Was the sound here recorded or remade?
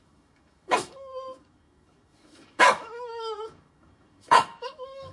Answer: remade